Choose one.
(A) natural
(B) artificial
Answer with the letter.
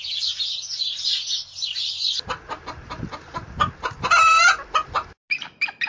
A